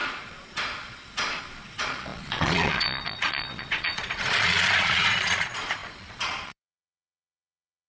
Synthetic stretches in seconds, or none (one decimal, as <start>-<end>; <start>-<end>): 0.0-7.9